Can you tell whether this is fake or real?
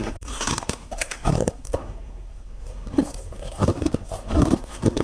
fake